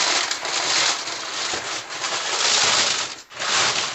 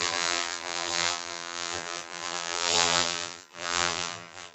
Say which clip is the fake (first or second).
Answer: second